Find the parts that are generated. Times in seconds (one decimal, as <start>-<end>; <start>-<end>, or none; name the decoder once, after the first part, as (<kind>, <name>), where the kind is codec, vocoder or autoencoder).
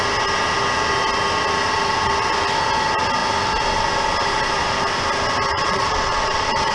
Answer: 5.5-6.7 (vocoder, Vocos)